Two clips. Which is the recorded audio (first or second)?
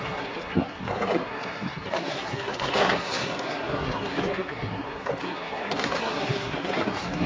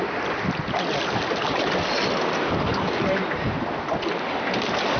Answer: second